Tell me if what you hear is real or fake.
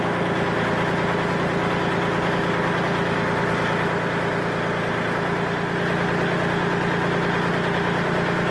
real